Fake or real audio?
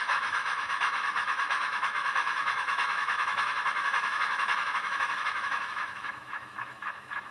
fake